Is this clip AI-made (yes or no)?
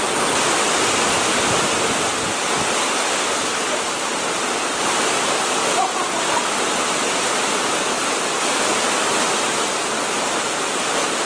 no